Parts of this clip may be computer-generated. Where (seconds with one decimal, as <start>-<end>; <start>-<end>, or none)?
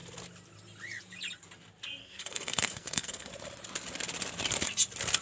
2.0-3.3